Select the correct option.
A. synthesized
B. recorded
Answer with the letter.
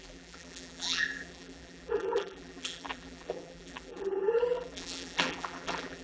A